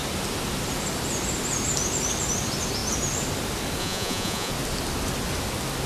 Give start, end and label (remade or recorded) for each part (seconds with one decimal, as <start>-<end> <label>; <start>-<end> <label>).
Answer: 0.0-3.8 recorded; 3.8-4.5 remade; 4.5-5.9 recorded